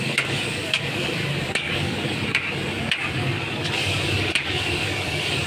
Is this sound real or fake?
fake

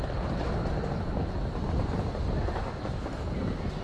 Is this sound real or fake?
real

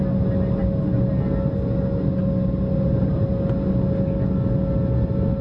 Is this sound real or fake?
real